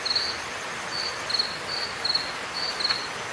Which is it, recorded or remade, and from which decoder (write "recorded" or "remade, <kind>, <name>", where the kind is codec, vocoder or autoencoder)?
recorded